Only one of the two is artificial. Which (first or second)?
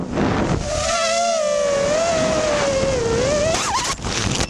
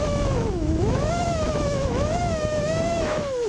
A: second